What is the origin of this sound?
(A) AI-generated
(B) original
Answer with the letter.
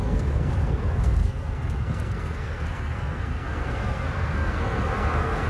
A